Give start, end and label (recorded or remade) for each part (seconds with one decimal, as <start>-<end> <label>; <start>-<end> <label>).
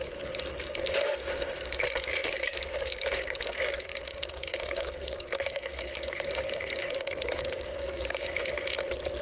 0.0-8.4 remade; 8.4-9.2 recorded